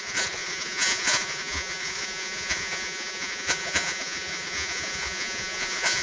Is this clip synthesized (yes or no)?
yes